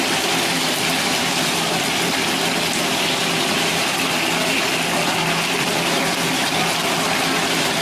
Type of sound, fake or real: fake